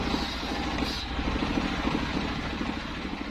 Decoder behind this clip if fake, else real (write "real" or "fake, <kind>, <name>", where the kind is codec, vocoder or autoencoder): real